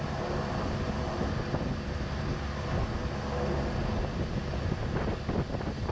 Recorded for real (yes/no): yes